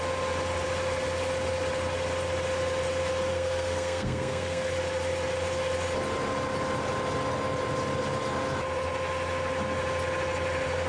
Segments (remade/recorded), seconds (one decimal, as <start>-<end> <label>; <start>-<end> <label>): 0.0-3.3 recorded; 3.3-4.7 remade; 4.7-10.9 recorded